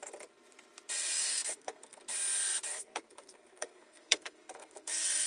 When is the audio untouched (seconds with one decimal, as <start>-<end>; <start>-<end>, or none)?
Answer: 0.0-1.3; 2.0-2.7